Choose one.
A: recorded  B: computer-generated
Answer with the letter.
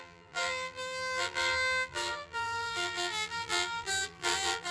B